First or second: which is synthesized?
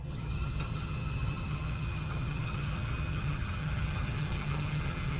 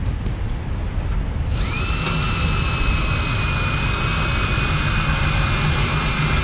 first